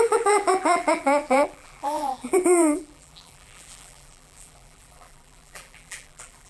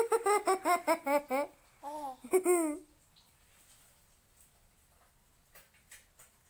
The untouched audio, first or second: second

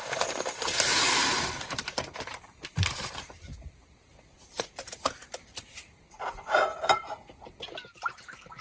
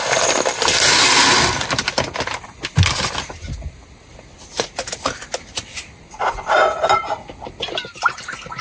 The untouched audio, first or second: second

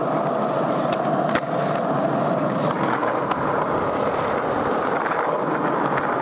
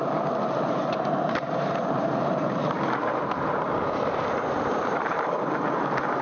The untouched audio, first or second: first